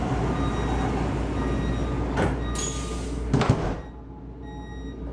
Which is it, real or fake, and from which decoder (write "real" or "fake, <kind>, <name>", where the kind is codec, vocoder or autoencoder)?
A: real